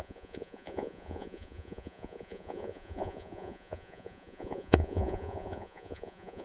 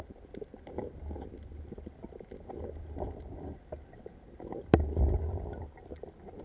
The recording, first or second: second